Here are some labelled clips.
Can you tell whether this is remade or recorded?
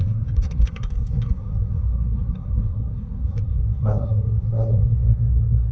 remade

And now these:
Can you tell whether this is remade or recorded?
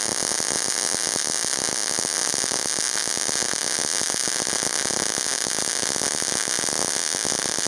recorded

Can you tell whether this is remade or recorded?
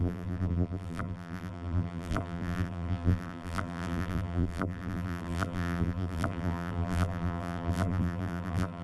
remade